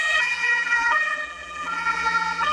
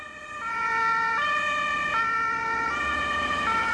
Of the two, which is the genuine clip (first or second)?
second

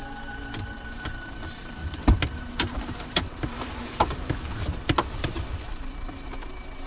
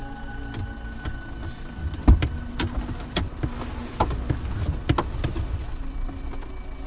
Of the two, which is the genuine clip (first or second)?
second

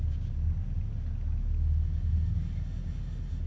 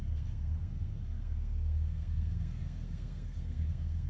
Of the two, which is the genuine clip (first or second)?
first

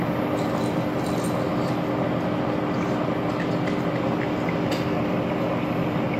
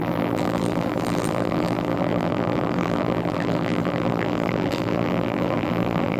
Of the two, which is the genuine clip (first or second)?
first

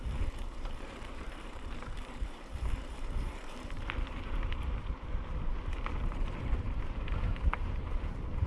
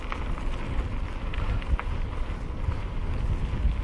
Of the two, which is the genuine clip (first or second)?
second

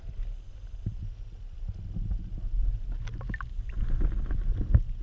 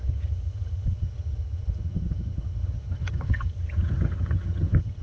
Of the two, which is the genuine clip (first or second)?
first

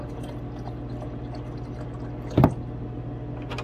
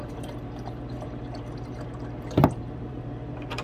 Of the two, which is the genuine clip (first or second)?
first